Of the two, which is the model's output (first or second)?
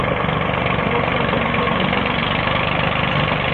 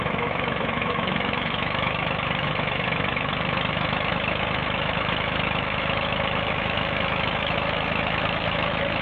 second